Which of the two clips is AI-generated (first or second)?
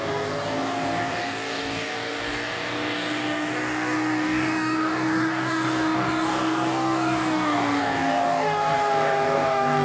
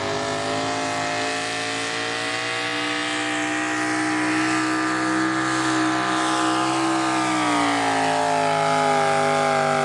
first